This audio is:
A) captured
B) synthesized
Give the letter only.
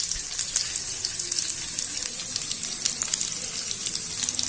A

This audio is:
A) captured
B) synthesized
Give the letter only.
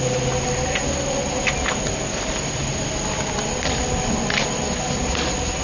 A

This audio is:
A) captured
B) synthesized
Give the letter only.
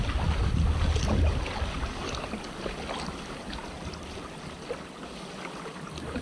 A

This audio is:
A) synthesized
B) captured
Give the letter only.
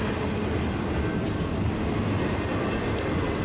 B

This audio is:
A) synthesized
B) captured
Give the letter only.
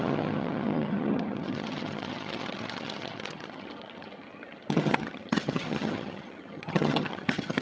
A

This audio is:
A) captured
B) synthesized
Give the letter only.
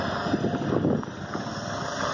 A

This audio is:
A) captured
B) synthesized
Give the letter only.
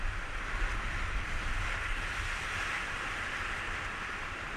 A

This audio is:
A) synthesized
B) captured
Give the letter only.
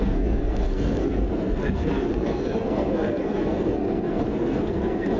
A